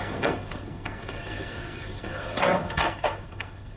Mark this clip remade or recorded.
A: remade